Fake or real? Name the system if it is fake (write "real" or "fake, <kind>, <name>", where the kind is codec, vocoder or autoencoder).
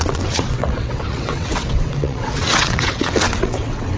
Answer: fake, vocoder, WaveNeXt